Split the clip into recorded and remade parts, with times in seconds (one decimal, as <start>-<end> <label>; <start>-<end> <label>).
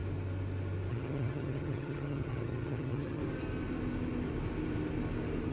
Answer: 0.0-0.9 recorded; 0.9-3.2 remade; 3.2-5.5 recorded